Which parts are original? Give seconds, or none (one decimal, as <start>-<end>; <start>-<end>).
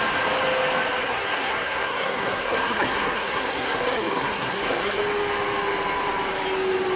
0.0-1.0; 5.0-7.0